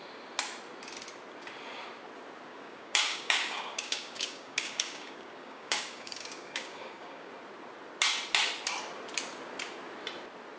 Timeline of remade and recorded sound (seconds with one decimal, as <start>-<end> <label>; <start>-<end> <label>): 0.0-2.5 recorded; 2.5-7.3 remade; 7.3-10.6 recorded